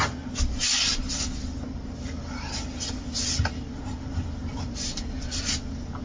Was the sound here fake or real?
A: real